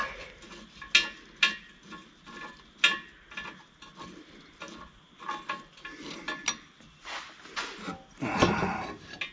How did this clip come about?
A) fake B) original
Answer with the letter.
B